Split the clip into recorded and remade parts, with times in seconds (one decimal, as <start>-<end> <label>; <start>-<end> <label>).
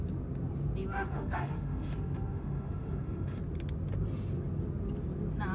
0.0-0.9 recorded; 0.9-3.4 remade; 3.4-5.5 recorded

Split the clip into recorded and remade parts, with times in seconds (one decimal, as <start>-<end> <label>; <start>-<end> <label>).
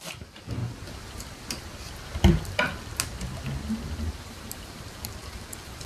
0.0-0.6 remade; 0.6-4.1 recorded; 4.1-5.9 remade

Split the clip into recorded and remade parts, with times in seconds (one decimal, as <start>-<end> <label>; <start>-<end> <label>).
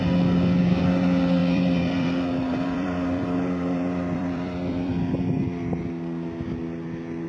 0.0-1.4 recorded; 1.4-4.9 remade; 4.9-7.3 recorded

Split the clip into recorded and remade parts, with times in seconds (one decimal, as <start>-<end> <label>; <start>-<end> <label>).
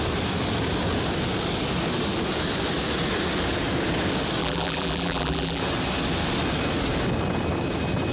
0.0-4.4 recorded; 4.4-5.6 remade; 5.6-8.1 recorded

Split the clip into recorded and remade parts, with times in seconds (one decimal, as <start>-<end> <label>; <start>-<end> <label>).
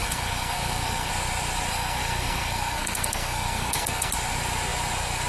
0.0-1.1 remade; 1.1-1.7 recorded; 1.7-4.1 remade; 4.1-5.3 recorded